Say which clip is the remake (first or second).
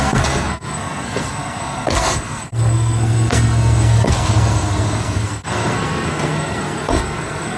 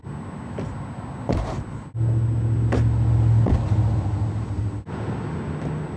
first